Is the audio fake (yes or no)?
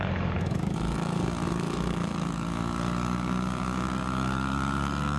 yes